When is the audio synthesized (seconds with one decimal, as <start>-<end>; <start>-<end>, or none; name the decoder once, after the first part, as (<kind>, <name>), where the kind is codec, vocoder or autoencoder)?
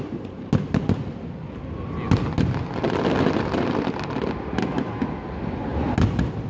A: none